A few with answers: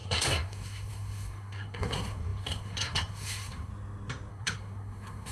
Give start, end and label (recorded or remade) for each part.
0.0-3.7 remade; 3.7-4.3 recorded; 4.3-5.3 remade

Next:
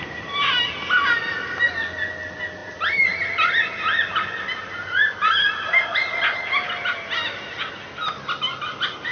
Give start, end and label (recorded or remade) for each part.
0.0-9.1 recorded

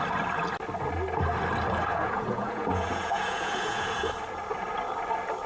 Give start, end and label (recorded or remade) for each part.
0.0-1.9 recorded; 1.9-4.1 remade; 4.1-5.5 recorded

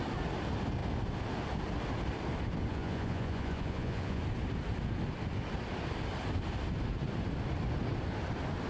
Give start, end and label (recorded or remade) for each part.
0.0-2.7 recorded; 2.7-4.2 remade; 4.2-8.7 recorded

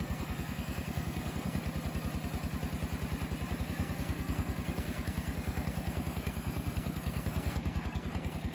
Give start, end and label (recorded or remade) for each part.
0.0-1.6 remade; 1.6-3.6 recorded; 3.6-8.5 remade

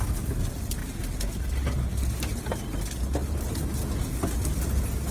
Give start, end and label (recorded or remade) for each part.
0.0-5.1 recorded

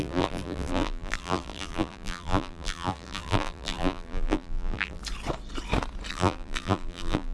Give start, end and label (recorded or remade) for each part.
0.0-5.0 remade; 5.0-6.1 recorded; 6.1-7.3 remade

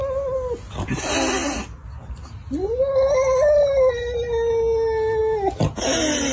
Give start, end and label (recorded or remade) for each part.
0.0-6.3 recorded